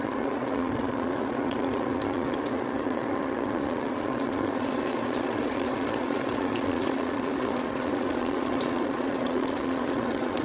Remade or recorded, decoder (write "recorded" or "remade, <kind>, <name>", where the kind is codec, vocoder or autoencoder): remade, vocoder, Vocos